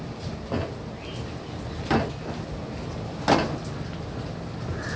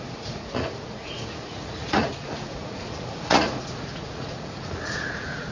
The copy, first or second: second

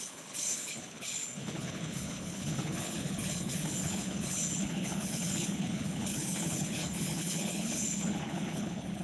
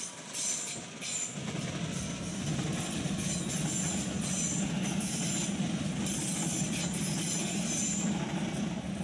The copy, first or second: first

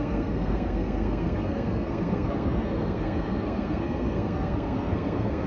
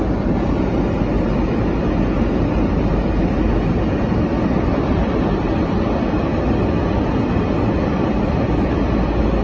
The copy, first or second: first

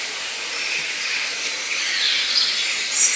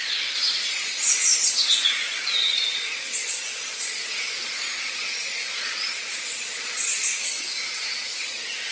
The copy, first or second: second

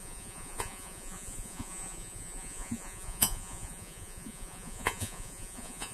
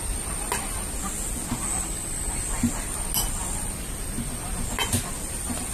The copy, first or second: first